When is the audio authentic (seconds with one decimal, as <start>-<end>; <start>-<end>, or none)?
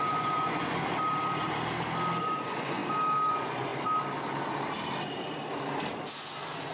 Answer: 0.8-2.2; 2.8-3.3; 3.7-6.7